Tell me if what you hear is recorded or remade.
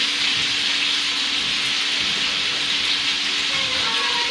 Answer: recorded